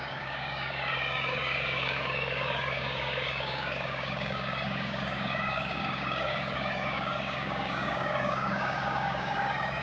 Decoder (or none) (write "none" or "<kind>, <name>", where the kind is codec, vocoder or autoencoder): codec, DAC